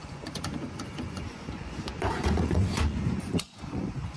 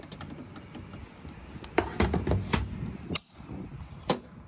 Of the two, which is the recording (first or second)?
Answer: second